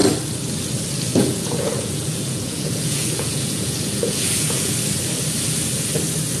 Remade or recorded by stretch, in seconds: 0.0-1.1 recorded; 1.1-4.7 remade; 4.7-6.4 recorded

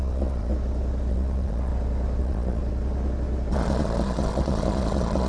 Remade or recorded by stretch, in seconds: 0.0-0.5 remade; 0.5-1.1 recorded; 1.1-1.7 remade; 1.7-2.2 recorded; 2.2-2.6 remade; 2.6-3.5 recorded; 3.5-5.3 remade

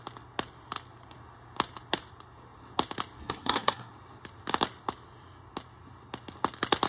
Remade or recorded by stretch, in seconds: 0.0-3.2 recorded; 3.2-3.9 remade; 3.9-6.9 recorded

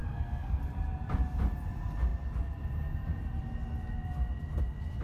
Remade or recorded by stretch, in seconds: 0.0-0.6 remade; 0.6-5.0 recorded

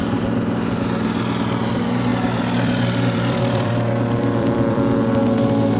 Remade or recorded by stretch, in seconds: 0.0-0.8 remade; 0.8-2.1 recorded; 2.1-4.8 remade; 4.8-5.8 recorded

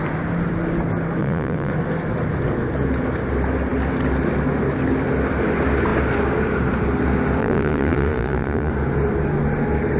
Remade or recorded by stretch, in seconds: 0.0-1.2 recorded; 1.2-1.7 remade; 1.7-7.4 recorded; 7.4-8.7 remade; 8.7-10.0 recorded

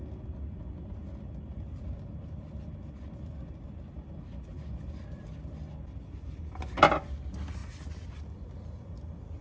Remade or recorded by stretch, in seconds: 0.0-9.4 recorded